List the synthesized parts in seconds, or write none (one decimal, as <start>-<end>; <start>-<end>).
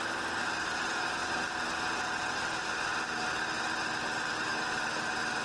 none